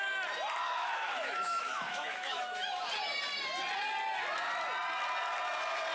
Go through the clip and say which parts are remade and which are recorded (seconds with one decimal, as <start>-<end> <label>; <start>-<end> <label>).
0.0-0.7 recorded; 0.7-2.8 remade; 2.8-5.9 recorded